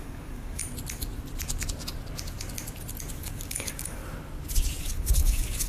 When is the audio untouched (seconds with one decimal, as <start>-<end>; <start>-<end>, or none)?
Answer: 0.6-3.1; 4.0-4.8

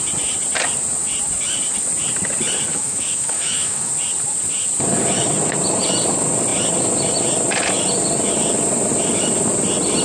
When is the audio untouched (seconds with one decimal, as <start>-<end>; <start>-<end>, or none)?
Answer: 0.0-2.7; 3.9-10.0

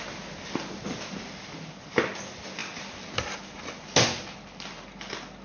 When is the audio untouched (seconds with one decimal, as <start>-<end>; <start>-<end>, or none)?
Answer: 0.0-5.4

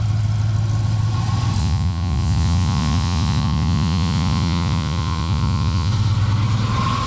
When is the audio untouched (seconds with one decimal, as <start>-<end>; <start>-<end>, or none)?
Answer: 0.0-1.6; 5.9-7.1

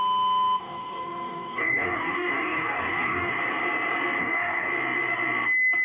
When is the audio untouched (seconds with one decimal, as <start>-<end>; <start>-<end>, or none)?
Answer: 0.0-0.6; 3.3-4.2; 4.7-5.8

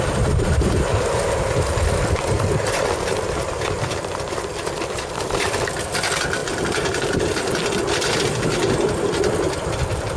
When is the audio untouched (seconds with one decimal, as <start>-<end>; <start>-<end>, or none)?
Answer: 6.4-7.9

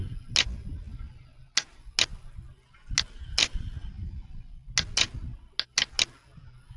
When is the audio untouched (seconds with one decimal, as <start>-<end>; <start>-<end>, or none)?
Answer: 0.0-6.8

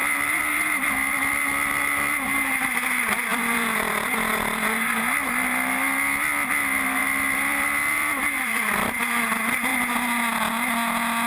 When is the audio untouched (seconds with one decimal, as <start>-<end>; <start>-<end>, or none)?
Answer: 1.8-3.3; 5.0-7.0; 9.0-11.3